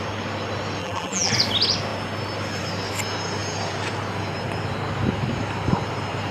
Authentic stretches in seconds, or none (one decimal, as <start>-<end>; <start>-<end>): 0.0-0.8; 1.3-6.3